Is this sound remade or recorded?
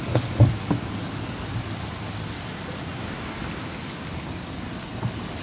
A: recorded